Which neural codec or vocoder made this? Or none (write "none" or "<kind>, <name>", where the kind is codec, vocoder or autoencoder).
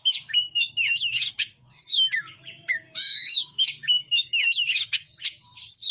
codec, DAC